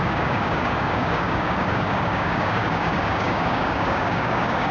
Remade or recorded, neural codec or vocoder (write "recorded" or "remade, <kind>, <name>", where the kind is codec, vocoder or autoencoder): remade, codec, DAC